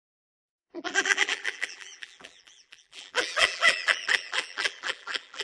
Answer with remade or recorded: remade